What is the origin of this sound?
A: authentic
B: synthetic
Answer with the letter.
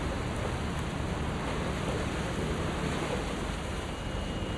A